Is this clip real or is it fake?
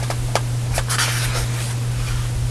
real